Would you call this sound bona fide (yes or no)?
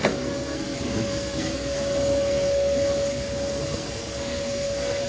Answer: no